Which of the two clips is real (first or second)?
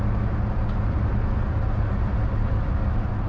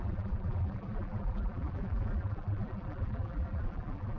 first